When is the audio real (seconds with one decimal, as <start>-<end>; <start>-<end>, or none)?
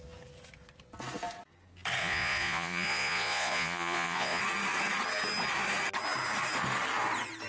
0.0-2.0; 4.4-7.5